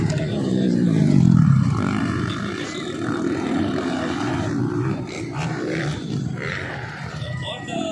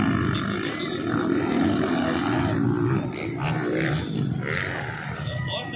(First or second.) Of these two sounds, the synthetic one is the first